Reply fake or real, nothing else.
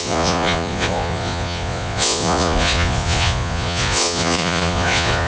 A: fake